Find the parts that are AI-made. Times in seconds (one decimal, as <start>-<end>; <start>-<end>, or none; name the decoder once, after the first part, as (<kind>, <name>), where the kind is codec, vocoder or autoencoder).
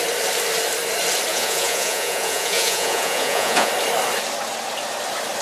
1.3-3.7 (vocoder, Vocos)